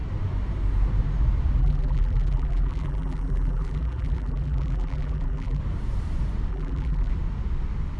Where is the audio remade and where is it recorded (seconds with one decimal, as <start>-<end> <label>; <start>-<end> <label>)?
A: 0.0-1.6 recorded; 1.6-5.6 remade; 5.6-6.5 recorded; 6.5-7.1 remade; 7.1-8.0 recorded